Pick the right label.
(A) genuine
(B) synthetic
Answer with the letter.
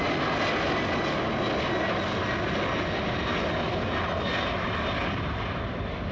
A